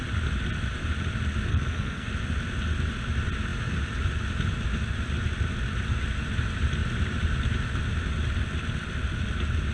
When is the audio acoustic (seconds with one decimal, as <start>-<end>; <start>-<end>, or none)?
0.0-1.5; 2.1-9.7